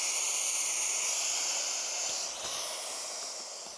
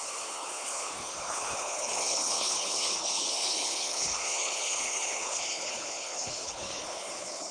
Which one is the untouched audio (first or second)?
first